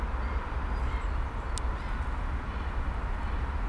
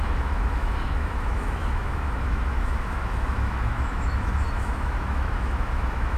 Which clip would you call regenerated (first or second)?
second